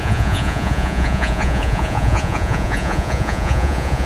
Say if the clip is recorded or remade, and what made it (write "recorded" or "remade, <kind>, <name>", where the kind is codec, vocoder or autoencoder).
remade, vocoder, Vocos